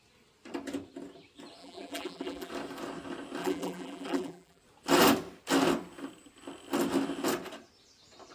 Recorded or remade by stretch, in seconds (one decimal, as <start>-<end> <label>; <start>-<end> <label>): 0.0-1.6 recorded; 1.6-2.5 remade; 2.5-3.4 recorded; 3.4-4.6 remade; 4.6-8.3 recorded